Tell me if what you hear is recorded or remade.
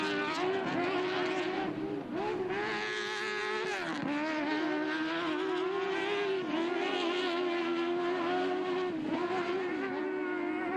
recorded